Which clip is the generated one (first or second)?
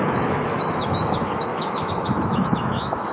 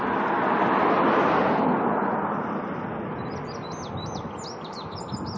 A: first